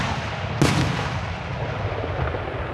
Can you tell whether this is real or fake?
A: real